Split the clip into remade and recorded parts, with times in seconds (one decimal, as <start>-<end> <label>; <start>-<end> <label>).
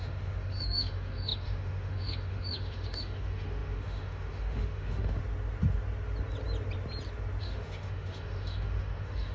0.0-5.2 remade; 5.2-7.4 recorded; 7.4-9.3 remade